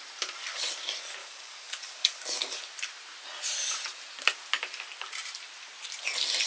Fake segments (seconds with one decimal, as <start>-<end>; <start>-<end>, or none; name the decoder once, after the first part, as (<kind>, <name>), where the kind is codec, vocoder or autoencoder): 1.2-2.6 (codec, DAC)